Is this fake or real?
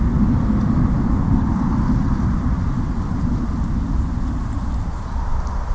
real